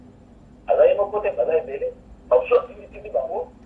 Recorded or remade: recorded